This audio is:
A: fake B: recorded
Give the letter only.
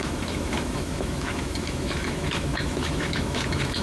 A